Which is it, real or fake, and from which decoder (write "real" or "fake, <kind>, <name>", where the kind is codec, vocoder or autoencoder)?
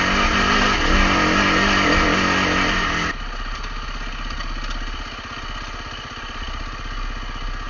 real